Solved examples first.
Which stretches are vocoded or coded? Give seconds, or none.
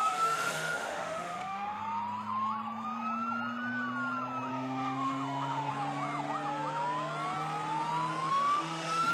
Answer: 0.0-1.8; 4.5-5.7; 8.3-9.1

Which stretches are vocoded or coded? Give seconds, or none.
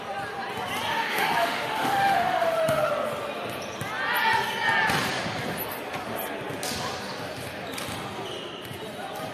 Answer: 0.9-2.9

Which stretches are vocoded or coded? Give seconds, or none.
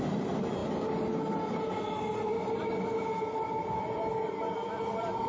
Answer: none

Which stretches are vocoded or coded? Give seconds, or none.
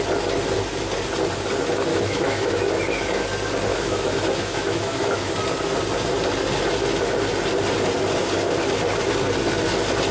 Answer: 1.9-2.7; 3.7-5.3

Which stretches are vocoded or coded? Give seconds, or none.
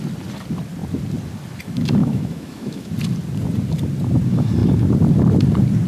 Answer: 2.0-2.9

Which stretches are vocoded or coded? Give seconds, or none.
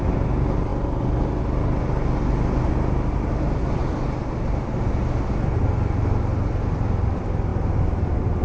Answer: none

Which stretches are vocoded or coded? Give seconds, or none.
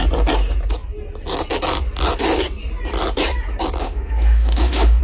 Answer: 3.8-5.0